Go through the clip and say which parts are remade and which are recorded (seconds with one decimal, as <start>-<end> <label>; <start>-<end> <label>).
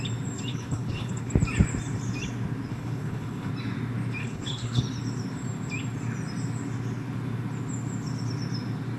0.0-0.5 recorded; 0.5-1.3 remade; 1.3-2.7 recorded; 2.7-3.5 remade; 3.5-4.2 recorded; 4.2-4.8 remade; 4.8-9.0 recorded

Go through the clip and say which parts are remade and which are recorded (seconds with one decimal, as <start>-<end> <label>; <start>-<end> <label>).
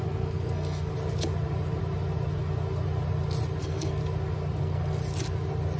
0.0-0.9 remade; 0.9-3.6 recorded; 3.6-4.0 remade; 4.0-4.6 recorded; 4.6-5.0 remade; 5.0-5.8 recorded